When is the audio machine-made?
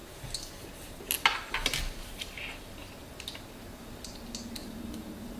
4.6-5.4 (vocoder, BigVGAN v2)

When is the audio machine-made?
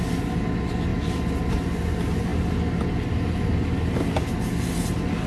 0.9-1.5 (vocoder, BigVGAN v2)